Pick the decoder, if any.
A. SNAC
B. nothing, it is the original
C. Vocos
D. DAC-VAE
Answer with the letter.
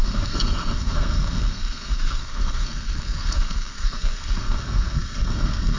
A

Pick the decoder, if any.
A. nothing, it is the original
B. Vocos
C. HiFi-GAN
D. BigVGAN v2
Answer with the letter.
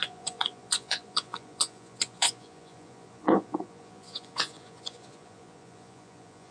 B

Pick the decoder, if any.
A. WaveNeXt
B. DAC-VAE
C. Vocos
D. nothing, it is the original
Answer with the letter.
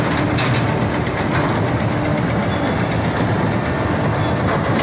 D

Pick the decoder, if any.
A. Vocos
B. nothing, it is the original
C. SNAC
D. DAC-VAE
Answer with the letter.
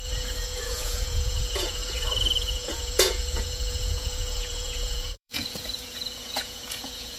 A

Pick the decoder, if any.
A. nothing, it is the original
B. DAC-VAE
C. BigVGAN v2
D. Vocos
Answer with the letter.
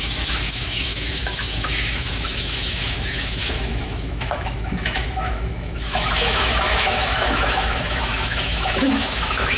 B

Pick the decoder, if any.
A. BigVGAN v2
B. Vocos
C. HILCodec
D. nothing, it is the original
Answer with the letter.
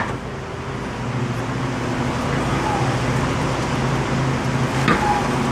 D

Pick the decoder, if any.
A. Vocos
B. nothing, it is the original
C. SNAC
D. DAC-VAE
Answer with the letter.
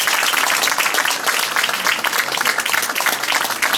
B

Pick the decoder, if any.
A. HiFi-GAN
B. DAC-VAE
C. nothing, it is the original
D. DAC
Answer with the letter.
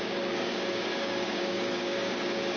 D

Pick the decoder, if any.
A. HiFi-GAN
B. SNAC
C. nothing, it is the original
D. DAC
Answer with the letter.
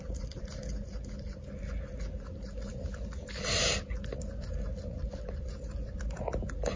C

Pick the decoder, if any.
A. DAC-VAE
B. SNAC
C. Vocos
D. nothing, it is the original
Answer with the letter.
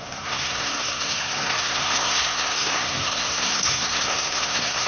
B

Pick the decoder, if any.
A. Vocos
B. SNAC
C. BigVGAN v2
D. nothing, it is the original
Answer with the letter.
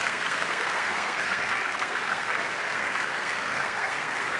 B